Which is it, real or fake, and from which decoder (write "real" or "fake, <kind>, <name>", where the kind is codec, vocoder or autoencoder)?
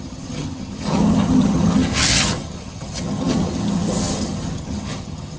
fake, vocoder, HiFi-GAN